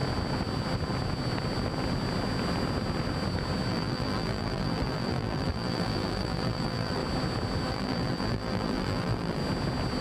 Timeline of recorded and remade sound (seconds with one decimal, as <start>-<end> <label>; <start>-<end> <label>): 0.0-3.7 recorded; 3.7-7.0 remade; 7.0-7.7 recorded; 7.7-9.4 remade; 9.4-10.0 recorded